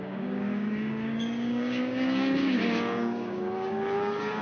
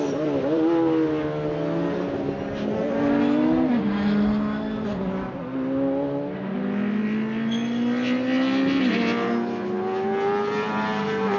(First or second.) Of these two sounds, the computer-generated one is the first